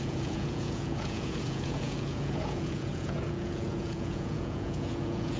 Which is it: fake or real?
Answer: fake